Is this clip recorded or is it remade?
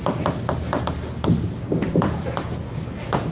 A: recorded